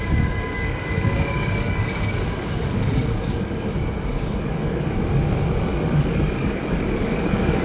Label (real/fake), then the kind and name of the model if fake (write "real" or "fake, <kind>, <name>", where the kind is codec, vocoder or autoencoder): fake, codec, DAC